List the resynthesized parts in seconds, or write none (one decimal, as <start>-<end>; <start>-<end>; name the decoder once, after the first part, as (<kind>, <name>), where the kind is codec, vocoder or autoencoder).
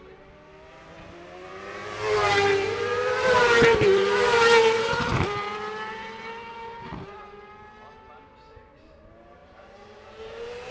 2.2-7.2 (vocoder, BigVGAN v2); 9.4-10.7